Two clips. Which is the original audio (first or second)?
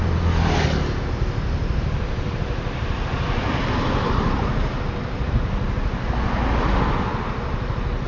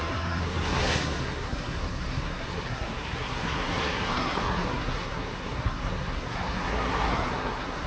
first